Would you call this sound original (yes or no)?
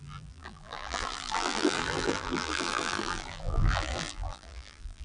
no